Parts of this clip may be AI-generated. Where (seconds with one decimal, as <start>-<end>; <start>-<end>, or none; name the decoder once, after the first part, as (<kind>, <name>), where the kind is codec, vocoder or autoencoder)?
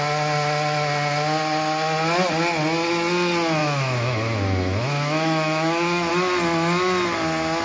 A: 3.6-6.1 (autoencoder, DAC-VAE)